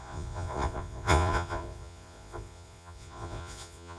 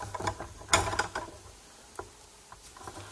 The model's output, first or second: first